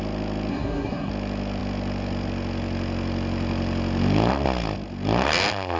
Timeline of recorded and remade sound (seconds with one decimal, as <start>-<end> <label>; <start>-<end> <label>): 0.0-0.5 recorded; 0.5-1.1 remade; 1.1-5.8 recorded